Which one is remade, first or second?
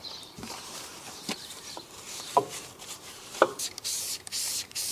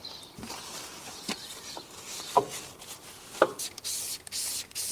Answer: first